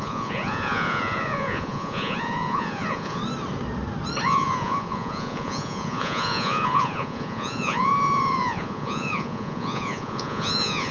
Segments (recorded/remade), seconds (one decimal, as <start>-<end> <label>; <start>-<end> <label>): 0.0-3.2 remade; 3.2-4.2 recorded; 4.2-10.9 remade